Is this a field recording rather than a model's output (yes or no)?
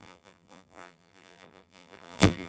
no